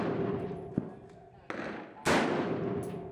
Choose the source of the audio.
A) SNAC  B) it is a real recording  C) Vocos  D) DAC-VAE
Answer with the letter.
B